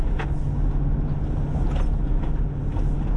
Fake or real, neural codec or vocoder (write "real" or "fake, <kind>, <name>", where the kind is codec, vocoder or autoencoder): real